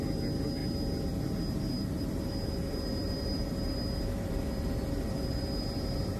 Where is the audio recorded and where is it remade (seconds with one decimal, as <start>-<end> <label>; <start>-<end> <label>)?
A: 0.0-6.2 remade